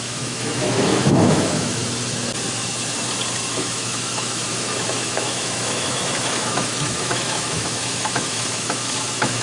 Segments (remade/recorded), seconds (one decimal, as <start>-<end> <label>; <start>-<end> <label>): 0.0-1.8 remade; 1.8-3.5 recorded; 3.5-9.4 remade